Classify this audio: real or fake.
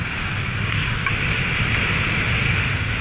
real